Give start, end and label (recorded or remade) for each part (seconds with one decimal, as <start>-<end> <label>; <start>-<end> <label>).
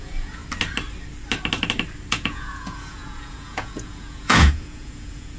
0.0-0.4 remade; 0.4-2.1 recorded; 2.1-5.4 remade